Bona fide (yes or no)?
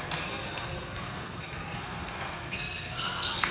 no